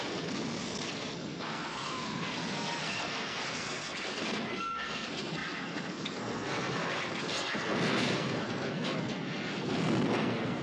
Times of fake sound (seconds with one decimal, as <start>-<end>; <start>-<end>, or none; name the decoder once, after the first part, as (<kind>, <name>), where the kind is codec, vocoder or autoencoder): 0.0-10.6 (codec, SNAC)